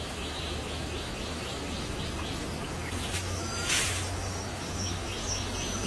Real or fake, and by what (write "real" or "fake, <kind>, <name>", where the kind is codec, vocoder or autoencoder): fake, autoencoder, DAC-VAE